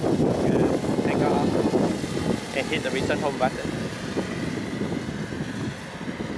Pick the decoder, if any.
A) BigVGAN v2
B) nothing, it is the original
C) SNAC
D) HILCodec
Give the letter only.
B